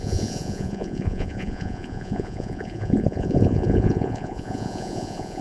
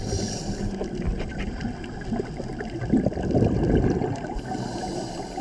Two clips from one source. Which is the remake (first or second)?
first